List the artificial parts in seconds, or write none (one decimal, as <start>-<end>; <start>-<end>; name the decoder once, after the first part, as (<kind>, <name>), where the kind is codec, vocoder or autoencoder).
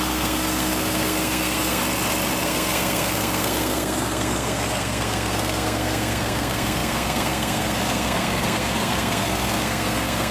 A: 0.0-1.8 (codec, SNAC); 2.4-10.3